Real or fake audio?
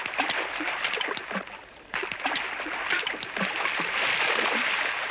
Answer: real